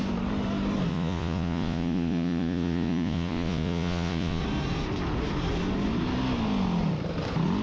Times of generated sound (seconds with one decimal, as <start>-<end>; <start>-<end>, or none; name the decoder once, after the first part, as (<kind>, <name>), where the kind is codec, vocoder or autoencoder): 0.9-4.4 (vocoder, Vocos)